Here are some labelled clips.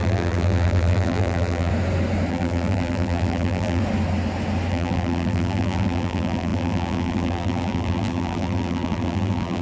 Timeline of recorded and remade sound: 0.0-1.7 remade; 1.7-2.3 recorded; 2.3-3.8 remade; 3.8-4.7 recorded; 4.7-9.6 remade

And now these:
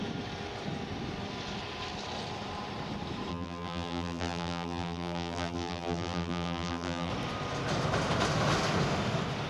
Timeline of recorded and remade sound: 0.0-3.3 recorded; 3.3-7.1 remade; 7.1-9.5 recorded

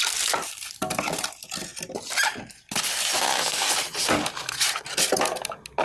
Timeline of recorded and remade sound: 0.0-5.8 recorded

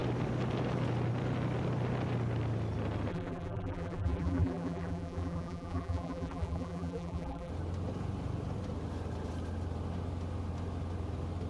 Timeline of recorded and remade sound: 0.0-3.1 recorded; 3.1-7.5 remade; 7.5-11.5 recorded

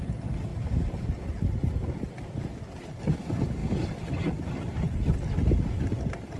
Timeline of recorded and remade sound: 0.0-6.4 recorded

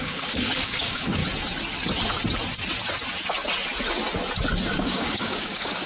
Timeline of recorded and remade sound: 0.0-1.2 remade; 1.2-4.7 recorded; 4.7-5.9 remade